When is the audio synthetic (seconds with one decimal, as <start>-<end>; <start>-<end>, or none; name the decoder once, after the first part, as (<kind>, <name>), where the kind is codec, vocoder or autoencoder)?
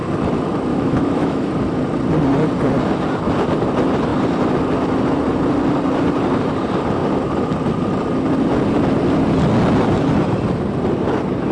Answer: 0.7-1.5 (autoencoder, DAC-VAE)